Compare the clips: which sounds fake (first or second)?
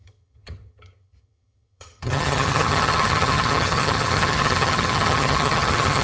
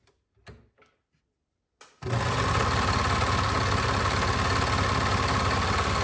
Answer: first